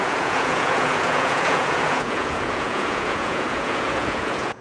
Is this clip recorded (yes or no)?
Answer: no